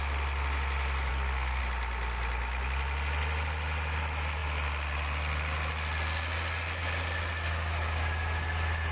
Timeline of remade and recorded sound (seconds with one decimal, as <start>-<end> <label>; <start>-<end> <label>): 0.0-1.1 recorded; 1.1-1.6 remade; 1.6-8.9 recorded